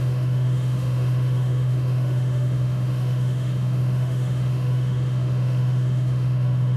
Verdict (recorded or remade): remade